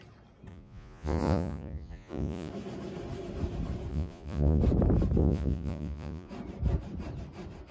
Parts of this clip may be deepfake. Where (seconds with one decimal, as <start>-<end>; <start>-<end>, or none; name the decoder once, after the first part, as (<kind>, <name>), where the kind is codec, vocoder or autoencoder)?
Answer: 0.5-2.5 (vocoder, Vocos); 3.9-4.6; 5.2-6.3